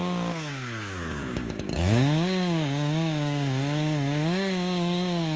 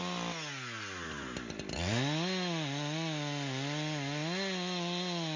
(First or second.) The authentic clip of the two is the second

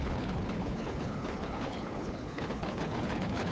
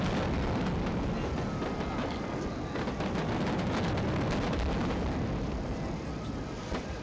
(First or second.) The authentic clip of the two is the second